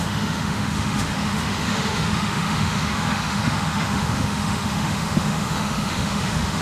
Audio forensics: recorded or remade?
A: remade